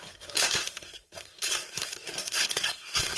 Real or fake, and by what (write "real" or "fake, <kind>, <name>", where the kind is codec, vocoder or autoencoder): fake, codec, SNAC